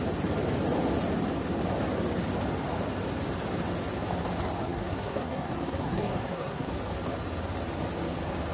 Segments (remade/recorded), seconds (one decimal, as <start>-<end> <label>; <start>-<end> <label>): 0.0-4.6 recorded; 4.6-6.7 remade; 6.7-8.5 recorded